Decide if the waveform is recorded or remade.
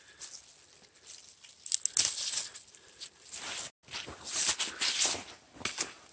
recorded